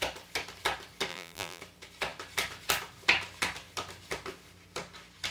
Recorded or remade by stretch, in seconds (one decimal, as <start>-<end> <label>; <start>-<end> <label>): 0.0-1.1 recorded; 1.1-1.6 remade; 1.6-5.3 recorded